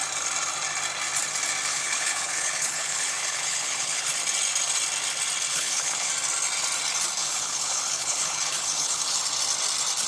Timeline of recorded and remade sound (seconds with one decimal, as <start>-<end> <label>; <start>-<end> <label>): 0.0-1.7 recorded; 1.7-4.1 remade; 4.1-5.5 recorded; 5.5-6.1 remade; 6.1-7.2 recorded; 7.2-9.2 remade; 9.2-10.1 recorded